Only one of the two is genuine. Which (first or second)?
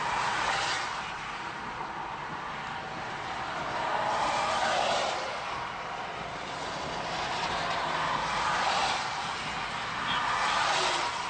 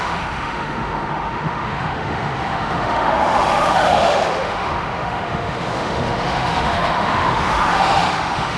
first